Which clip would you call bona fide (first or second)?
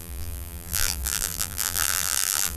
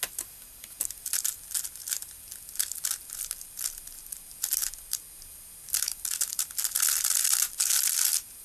second